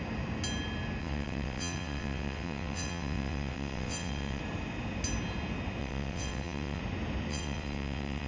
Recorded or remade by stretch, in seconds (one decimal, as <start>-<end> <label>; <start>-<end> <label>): 0.0-1.0 recorded; 1.0-4.4 remade; 4.4-5.8 recorded; 5.8-6.8 remade; 6.8-7.3 recorded; 7.3-8.3 remade